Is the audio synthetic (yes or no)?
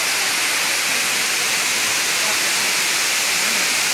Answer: no